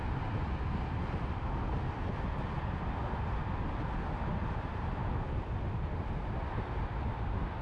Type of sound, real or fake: real